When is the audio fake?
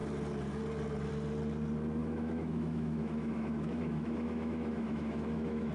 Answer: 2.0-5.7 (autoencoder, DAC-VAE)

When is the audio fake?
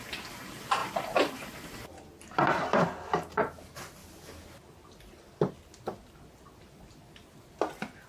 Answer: none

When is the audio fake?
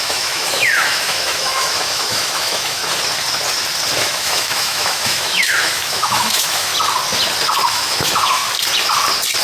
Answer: 0.0-2.8 (autoencoder, DAC-VAE); 4.0-6.7; 7.7-8.4